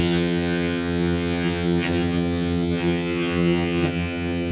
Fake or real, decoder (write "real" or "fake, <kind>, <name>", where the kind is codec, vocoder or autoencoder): fake, vocoder, HiFi-GAN